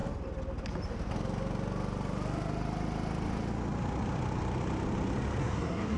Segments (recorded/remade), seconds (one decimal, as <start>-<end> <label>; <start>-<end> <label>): 0.0-5.4 recorded; 5.4-6.0 remade